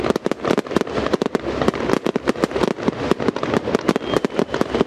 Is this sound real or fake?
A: real